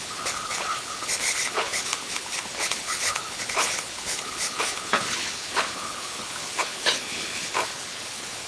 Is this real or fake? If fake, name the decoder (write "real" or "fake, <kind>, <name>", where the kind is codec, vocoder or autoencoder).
fake, codec, HILCodec